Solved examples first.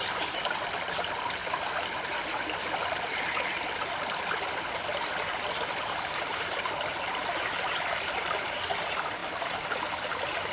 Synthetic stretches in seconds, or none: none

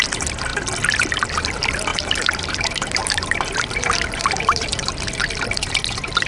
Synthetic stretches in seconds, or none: 1.9-4.9 (vocoder, BigVGAN v2)

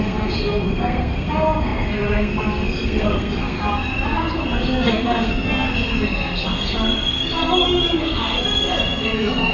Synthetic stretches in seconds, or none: 0.0-9.5 (codec, SNAC)

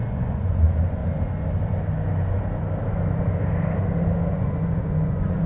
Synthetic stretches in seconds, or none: 0.0-1.0 (vocoder, Vocos); 4.3-5.5

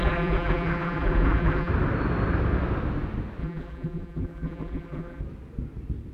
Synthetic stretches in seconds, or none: 0.0-1.7 (vocoder, BigVGAN v2); 3.4-5.2